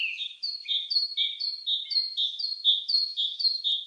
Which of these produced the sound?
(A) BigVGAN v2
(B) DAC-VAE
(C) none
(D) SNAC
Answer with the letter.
C